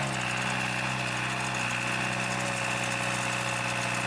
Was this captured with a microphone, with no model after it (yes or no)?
yes